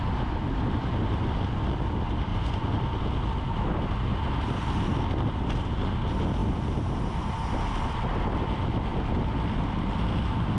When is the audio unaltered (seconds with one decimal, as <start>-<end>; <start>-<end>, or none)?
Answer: 0.0-2.3; 2.8-10.6